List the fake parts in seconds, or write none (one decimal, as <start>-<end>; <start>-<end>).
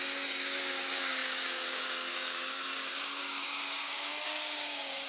0.0-5.1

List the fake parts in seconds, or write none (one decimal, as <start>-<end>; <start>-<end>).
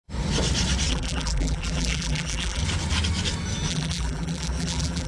0.9-2.6; 3.7-5.1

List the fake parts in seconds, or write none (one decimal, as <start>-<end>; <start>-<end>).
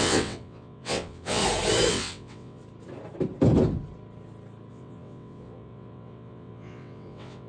0.0-1.4; 1.9-2.6; 4.7-7.5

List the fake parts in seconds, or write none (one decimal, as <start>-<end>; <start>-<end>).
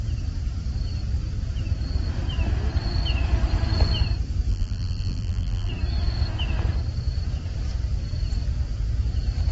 4.5-5.7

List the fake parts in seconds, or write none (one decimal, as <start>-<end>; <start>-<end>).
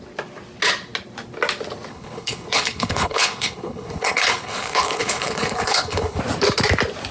1.9-6.2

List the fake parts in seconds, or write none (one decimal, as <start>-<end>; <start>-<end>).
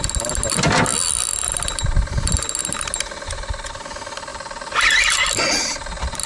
4.3-4.9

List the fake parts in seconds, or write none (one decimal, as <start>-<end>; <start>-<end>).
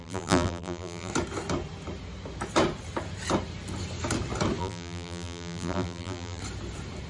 0.0-1.1; 4.6-6.4